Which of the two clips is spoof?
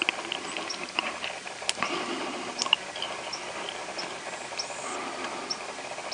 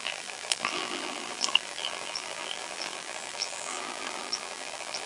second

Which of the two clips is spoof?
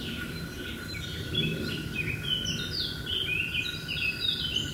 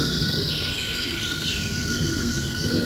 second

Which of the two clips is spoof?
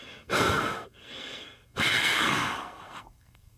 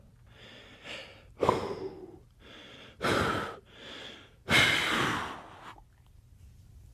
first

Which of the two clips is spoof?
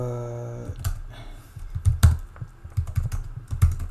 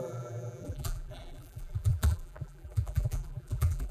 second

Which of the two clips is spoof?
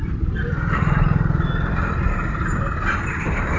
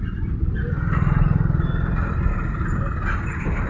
first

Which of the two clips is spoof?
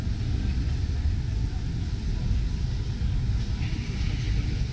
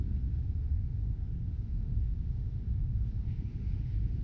second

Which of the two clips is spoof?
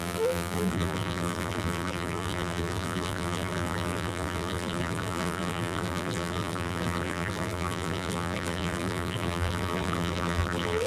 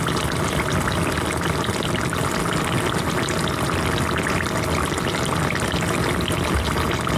first